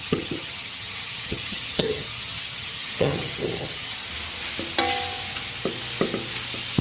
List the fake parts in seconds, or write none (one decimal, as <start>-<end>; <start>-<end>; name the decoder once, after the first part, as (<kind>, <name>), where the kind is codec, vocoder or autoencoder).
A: 0.0-4.1 (vocoder, HiFi-GAN)